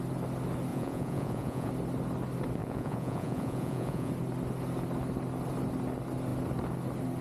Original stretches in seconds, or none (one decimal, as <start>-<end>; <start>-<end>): 0.0-0.7; 1.7-2.6; 4.1-7.2